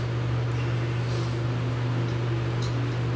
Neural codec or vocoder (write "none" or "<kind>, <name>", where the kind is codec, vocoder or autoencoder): none